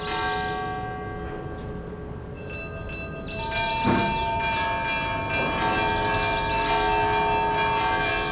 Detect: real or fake real